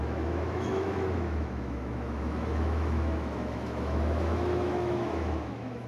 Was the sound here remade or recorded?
remade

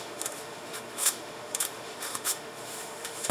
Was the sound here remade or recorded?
remade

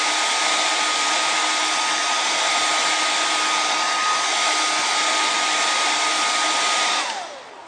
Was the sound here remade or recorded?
recorded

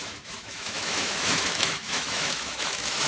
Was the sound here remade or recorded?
remade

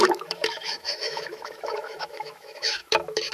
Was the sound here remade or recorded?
remade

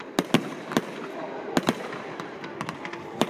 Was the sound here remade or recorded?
recorded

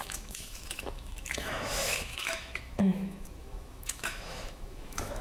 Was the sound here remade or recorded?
remade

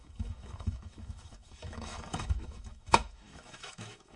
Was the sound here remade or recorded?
remade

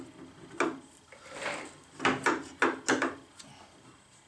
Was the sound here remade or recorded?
recorded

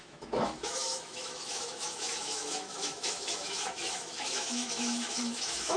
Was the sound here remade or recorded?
remade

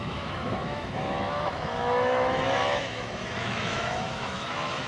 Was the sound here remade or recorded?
remade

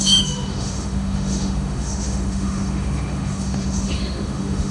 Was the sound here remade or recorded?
remade